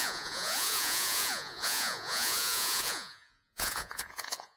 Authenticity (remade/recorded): remade